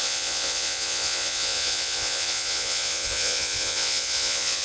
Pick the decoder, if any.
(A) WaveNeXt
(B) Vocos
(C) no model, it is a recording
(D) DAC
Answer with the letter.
B